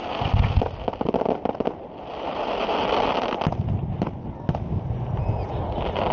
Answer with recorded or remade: recorded